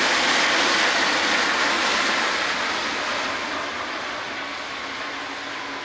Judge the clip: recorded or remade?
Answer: recorded